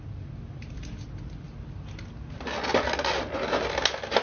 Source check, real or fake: real